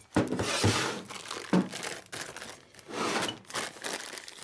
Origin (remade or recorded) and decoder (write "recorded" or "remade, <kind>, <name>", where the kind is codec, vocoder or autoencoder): recorded